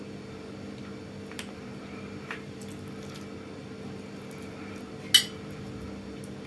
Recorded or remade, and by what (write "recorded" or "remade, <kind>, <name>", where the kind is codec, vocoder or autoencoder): recorded